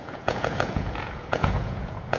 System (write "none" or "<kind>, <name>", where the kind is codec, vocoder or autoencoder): vocoder, Vocos